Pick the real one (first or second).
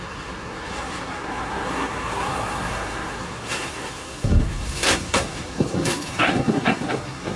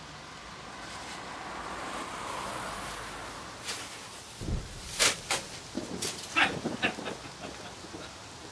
second